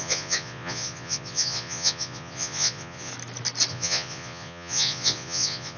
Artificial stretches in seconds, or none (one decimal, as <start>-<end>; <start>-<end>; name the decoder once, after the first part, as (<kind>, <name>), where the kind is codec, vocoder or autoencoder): 0.0-3.1 (vocoder, Vocos); 3.7-5.8